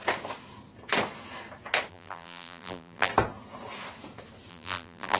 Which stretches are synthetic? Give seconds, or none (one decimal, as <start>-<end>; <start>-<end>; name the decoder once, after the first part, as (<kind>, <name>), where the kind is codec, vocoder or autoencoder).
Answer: 1.9-3.1 (vocoder, BigVGAN v2); 4.5-5.2